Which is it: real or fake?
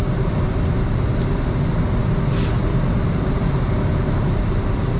real